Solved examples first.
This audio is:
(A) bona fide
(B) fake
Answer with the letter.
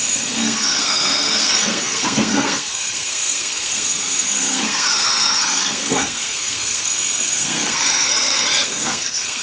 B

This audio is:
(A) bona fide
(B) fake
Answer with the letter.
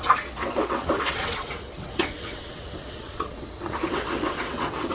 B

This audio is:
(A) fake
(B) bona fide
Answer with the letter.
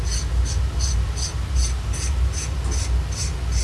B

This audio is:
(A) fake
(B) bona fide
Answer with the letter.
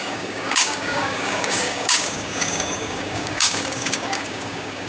A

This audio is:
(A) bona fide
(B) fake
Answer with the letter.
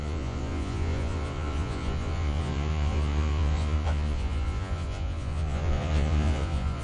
B